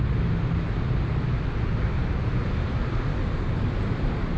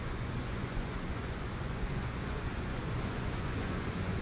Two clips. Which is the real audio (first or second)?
first